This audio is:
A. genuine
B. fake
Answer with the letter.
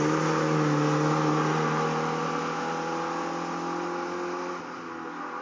A